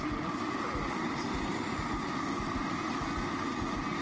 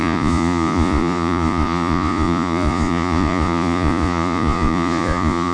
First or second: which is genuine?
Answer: first